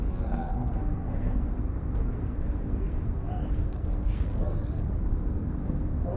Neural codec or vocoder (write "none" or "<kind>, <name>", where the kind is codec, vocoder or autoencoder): codec, SNAC